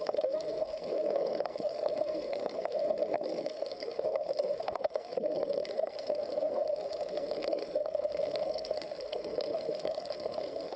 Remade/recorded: remade